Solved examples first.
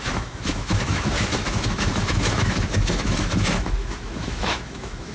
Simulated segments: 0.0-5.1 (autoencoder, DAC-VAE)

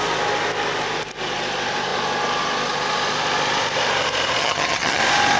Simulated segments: 4.4-5.0 (vocoder, HiFi-GAN)

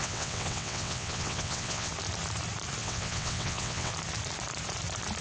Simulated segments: 0.0-1.9 (vocoder, WaveNeXt); 2.8-3.9

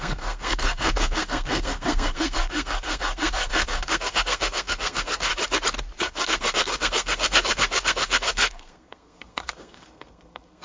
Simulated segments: 0.0-5.3 (codec, SNAC); 6.0-10.6

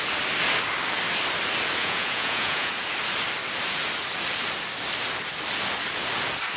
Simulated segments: 1.8-2.7 (vocoder, Vocos)

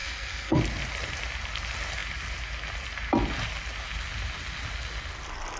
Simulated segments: 0.0-0.6 (codec, SNAC)